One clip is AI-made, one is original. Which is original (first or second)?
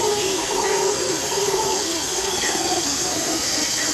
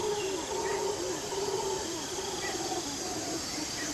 second